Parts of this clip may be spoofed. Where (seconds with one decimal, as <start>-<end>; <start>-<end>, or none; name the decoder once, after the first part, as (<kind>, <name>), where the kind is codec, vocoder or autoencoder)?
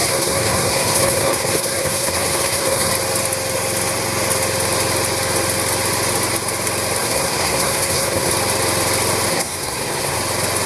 0.0-2.9 (codec, SNAC); 7.0-8.3; 9.3-10.2